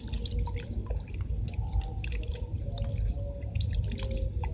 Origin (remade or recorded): recorded